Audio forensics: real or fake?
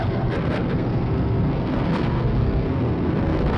fake